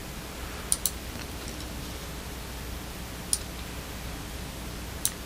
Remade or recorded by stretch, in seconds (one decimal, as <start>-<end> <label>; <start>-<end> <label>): 0.0-5.3 recorded